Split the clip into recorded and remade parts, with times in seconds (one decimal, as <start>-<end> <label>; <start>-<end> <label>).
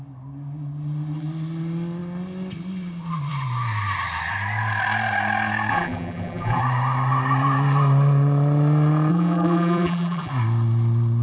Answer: 0.0-5.7 recorded; 5.7-6.6 remade; 6.6-9.1 recorded; 9.1-10.3 remade; 10.3-11.2 recorded